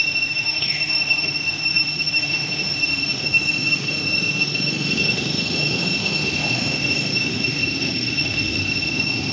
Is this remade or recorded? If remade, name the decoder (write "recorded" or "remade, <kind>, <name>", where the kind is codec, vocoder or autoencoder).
remade, autoencoder, DAC-VAE